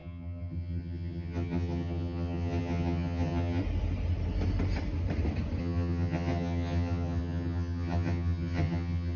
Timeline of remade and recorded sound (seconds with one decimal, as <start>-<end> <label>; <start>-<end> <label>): 0.0-3.6 remade; 3.6-5.6 recorded; 5.6-9.2 remade